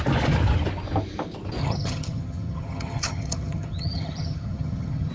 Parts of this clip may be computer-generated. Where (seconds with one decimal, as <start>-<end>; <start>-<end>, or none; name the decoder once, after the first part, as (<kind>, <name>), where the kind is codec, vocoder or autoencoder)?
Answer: 1.6-5.1 (vocoder, HiFi-GAN)